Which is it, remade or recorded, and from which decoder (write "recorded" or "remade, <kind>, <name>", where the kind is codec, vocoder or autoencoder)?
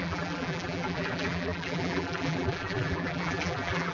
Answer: remade, vocoder, BigVGAN v2